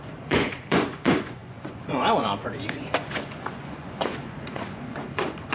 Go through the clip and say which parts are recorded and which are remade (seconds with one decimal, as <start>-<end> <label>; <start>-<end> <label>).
0.0-5.5 remade